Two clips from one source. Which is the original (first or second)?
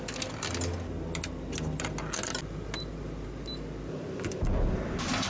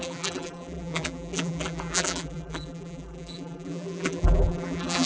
first